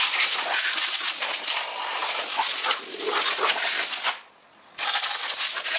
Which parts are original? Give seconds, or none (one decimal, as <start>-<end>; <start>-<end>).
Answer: 0.0-5.8